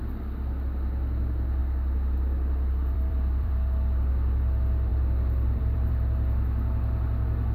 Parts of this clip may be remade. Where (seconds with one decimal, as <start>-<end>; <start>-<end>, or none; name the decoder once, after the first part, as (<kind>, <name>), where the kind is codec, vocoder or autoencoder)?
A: 1.6-4.1 (vocoder, BigVGAN v2); 4.9-5.9